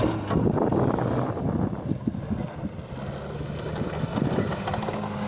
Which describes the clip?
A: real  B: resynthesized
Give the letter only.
A